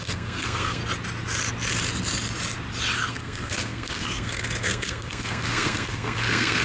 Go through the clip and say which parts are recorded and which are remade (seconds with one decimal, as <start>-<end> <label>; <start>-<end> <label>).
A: 0.0-0.8 remade; 0.8-3.1 recorded; 3.1-6.6 remade